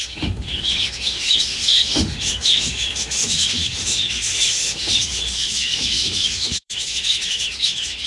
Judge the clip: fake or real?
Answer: fake